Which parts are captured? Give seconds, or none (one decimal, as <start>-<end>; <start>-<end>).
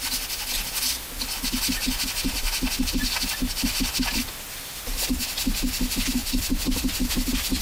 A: 0.0-6.2